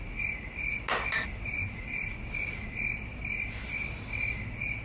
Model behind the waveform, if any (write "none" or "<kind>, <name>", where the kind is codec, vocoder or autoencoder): none